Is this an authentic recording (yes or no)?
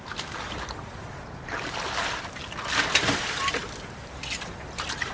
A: yes